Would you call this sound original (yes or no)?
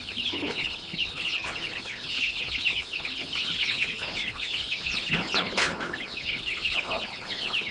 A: no